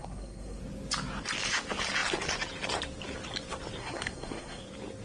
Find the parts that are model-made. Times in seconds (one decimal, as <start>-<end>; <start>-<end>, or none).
0.0-0.6; 3.8-4.6